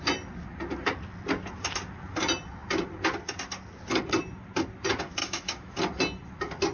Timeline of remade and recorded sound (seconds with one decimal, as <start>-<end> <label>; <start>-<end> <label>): 0.0-5.2 recorded; 5.2-5.7 remade; 5.7-6.7 recorded